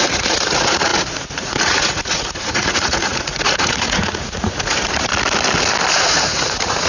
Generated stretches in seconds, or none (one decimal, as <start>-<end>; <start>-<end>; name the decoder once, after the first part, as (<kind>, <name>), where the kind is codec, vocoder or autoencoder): 0.0-5.1 (vocoder, Vocos); 5.9-6.9